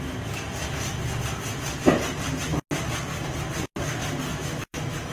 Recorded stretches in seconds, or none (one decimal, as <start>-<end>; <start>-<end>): 0.0-4.3